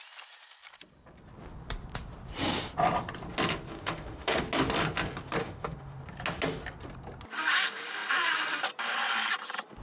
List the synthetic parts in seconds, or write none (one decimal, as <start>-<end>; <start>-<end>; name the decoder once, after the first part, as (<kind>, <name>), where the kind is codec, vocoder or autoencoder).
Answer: 3.7-4.4 (autoencoder, DAC-VAE); 5.4-6.0